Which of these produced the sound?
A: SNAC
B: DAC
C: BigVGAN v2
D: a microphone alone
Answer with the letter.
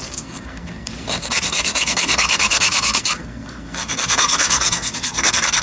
A